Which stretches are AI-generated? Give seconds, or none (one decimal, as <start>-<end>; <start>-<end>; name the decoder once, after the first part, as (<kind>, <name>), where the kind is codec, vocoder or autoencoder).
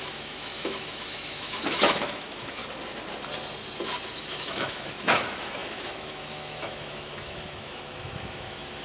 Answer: 0.0-2.6 (autoencoder, DAC-VAE); 4.2-8.8